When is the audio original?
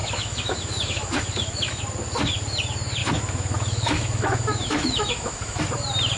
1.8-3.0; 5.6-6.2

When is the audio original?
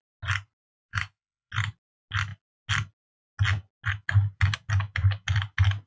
0.0-0.9; 1.5-5.9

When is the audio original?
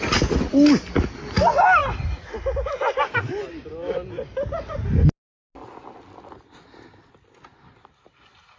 0.0-8.6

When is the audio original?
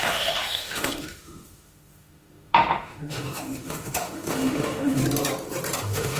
5.0-5.8